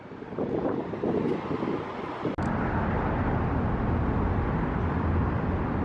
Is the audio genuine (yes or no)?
yes